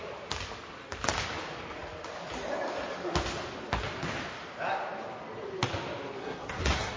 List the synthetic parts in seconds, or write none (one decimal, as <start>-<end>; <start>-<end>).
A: 6.2-7.0